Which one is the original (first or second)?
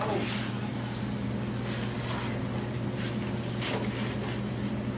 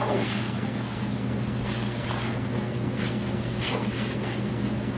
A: first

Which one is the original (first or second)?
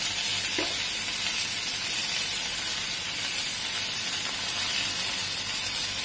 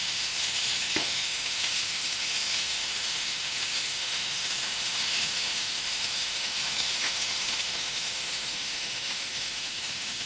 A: first